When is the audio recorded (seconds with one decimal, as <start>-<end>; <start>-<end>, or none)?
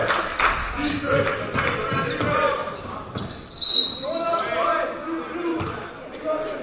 0.0-0.6; 1.4-6.6